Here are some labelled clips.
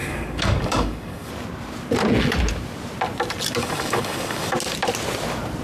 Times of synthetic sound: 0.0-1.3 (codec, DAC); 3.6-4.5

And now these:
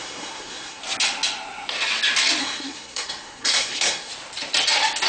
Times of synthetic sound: 0.0-0.8 (codec, SNAC); 2.4-4.1

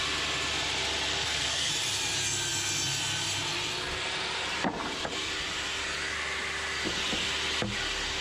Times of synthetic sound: 1.1-1.7 (codec, SNAC)

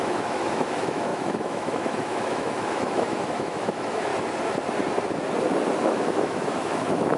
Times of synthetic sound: 0.0-4.1 (autoencoder, DAC-VAE); 5.8-7.2

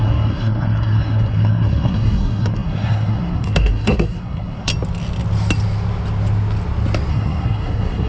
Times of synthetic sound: 0.0-4.7 (codec, SNAC); 7.1-8.1

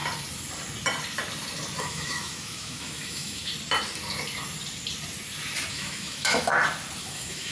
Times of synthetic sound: 1.8-3.5 (autoencoder, DAC-VAE); 5.7-6.5; 7.0-7.5